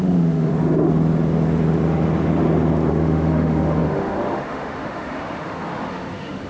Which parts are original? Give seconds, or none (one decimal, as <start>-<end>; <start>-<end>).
0.5-2.9